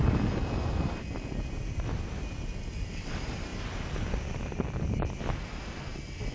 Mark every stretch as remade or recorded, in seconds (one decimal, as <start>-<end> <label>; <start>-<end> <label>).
0.0-6.3 recorded